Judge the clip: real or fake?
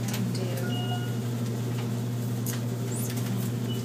real